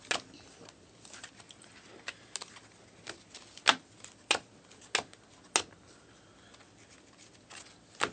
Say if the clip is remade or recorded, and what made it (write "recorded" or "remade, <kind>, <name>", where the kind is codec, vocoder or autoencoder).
recorded